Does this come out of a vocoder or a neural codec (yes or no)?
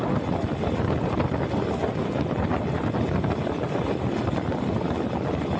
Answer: no